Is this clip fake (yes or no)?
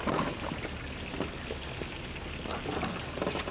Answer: no